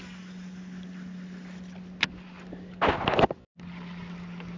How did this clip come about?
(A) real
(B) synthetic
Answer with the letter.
A